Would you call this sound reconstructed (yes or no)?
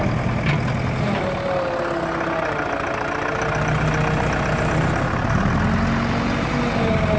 no